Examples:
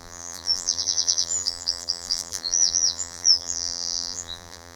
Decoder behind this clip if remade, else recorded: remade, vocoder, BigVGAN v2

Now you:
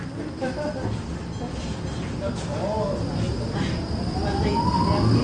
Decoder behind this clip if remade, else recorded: recorded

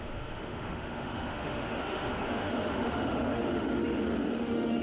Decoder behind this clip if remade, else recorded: remade, autoencoder, DAC-VAE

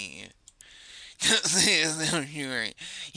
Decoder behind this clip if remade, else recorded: recorded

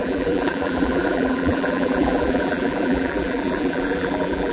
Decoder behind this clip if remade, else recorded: remade, vocoder, BigVGAN v2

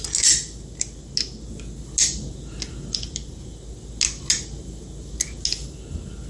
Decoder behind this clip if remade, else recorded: recorded